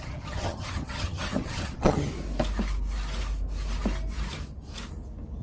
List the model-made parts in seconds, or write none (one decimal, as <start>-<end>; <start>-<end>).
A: 0.0-2.1